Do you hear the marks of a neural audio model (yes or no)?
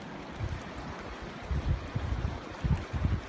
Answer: no